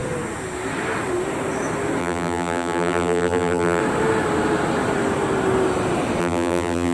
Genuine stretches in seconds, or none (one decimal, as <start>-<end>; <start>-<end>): 0.0-2.0; 3.8-6.2